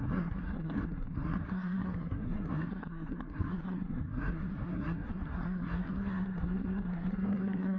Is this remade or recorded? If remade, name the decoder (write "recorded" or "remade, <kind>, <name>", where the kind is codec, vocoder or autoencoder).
remade, codec, SNAC